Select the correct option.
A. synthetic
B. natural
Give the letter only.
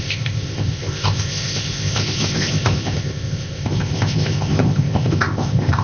A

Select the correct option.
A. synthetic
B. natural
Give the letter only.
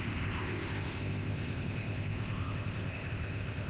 A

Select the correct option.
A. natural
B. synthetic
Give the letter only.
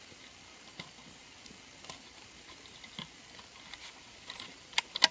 A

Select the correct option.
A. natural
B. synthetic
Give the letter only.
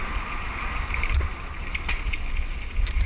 A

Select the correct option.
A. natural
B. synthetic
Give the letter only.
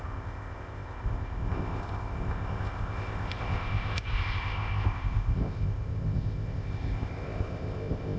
B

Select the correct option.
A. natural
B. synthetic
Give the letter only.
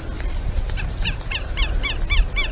A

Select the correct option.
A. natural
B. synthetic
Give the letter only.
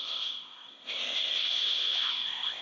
B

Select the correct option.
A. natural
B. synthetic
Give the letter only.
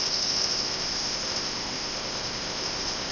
B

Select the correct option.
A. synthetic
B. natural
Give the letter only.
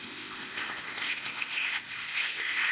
A